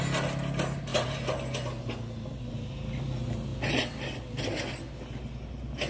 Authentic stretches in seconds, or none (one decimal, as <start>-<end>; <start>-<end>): 0.0-5.9

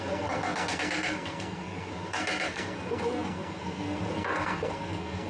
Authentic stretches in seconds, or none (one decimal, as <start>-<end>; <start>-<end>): none

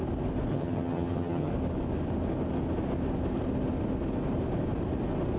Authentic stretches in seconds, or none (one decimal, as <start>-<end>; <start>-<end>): 0.0-0.5; 1.5-5.4

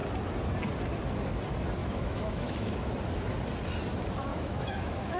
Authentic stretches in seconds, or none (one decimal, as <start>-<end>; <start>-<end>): 0.0-1.8; 3.0-4.3

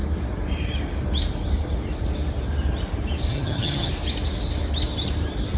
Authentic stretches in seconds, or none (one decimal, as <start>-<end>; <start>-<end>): 0.0-3.3; 3.9-5.6

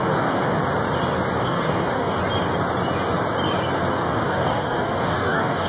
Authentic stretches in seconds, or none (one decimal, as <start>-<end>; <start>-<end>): 0.6-1.4; 2.2-3.9

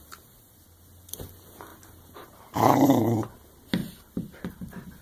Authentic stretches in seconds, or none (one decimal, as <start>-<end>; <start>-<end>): 0.0-1.7; 3.0-3.8; 4.5-5.0